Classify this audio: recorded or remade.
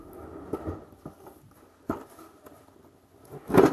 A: recorded